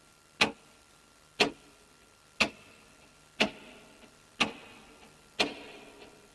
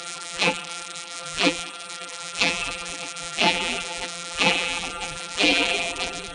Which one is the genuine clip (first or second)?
first